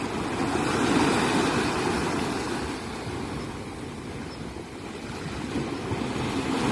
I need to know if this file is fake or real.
real